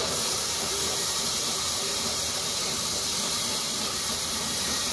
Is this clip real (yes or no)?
no